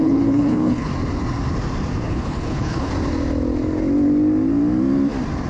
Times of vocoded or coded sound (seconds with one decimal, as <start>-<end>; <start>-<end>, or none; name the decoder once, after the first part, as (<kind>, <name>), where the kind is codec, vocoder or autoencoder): 0.0-0.9 (codec, HILCodec); 2.1-2.9